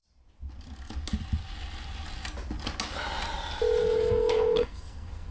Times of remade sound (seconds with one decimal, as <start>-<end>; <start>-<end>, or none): 3.8-5.3